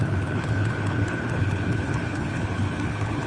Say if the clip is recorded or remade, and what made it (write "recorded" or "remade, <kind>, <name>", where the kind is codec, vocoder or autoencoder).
remade, codec, HILCodec